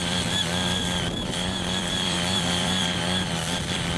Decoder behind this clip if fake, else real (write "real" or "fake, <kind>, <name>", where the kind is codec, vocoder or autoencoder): fake, vocoder, BigVGAN v2